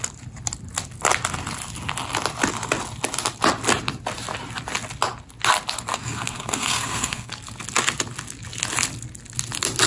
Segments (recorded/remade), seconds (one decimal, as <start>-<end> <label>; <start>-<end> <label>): 0.0-5.9 recorded; 5.9-7.3 remade; 7.3-9.9 recorded

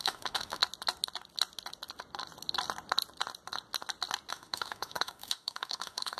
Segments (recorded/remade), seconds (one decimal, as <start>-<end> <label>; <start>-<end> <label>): 0.0-0.6 remade; 0.6-4.3 recorded; 4.3-6.2 remade

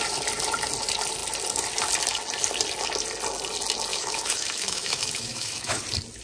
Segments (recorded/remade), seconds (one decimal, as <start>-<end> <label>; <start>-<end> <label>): 0.0-3.9 recorded; 3.9-5.8 remade; 5.8-6.2 recorded

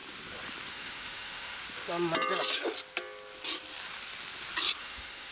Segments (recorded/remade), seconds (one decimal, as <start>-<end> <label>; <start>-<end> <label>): 0.0-0.7 recorded; 0.7-1.6 remade; 1.6-4.8 recorded; 4.8-5.3 remade

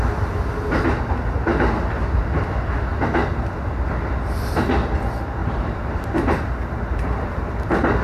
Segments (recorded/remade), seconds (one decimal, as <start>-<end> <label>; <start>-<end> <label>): 0.0-5.4 recorded; 5.4-7.5 remade; 7.5-8.0 recorded

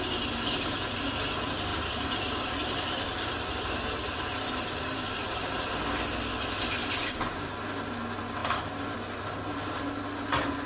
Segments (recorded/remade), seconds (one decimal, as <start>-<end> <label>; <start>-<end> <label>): 0.0-1.7 recorded; 1.7-5.6 remade; 5.6-6.8 recorded; 6.8-7.5 remade; 7.5-10.7 recorded

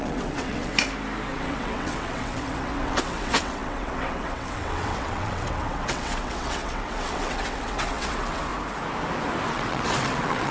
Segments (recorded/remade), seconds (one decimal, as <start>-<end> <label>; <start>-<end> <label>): 0.0-0.7 remade; 0.7-1.3 recorded; 1.3-8.5 remade; 8.5-9.5 recorded; 9.5-10.5 remade